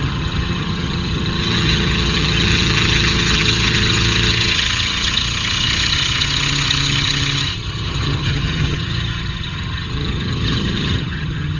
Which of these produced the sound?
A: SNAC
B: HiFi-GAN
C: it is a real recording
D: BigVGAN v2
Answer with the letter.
B